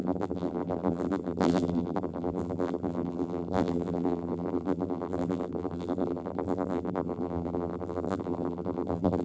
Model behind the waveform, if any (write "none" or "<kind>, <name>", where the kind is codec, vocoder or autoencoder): vocoder, BigVGAN v2